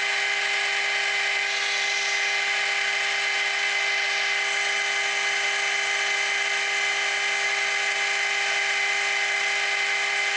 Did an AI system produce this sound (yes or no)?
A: no